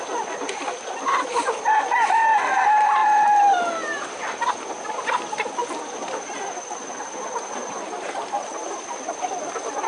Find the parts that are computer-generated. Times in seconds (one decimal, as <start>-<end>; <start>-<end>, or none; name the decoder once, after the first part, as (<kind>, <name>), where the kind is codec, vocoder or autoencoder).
none